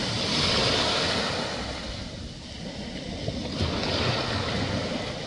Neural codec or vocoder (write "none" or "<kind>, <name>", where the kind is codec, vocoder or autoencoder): none